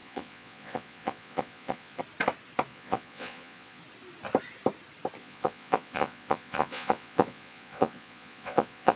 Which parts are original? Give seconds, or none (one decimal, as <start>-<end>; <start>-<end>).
2.0-2.7; 3.8-5.2